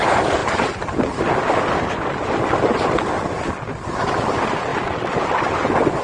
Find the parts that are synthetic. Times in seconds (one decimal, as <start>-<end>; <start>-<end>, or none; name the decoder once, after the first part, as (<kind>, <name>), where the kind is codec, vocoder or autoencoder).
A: none